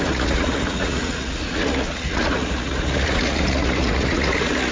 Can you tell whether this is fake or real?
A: fake